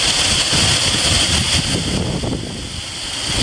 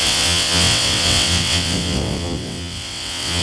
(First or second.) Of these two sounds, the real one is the first